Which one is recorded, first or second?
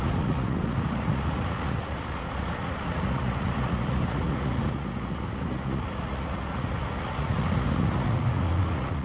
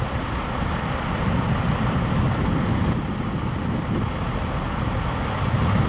second